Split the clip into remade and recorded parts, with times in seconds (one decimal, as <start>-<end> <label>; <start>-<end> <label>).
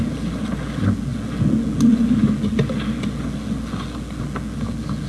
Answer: 0.0-5.1 recorded